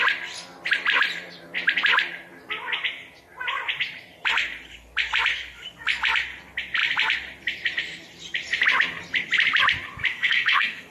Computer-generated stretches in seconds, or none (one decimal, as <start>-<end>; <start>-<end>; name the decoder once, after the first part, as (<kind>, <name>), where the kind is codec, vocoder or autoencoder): 10.1-10.9 (codec, SNAC)